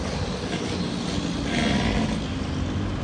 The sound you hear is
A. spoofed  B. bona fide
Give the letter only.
B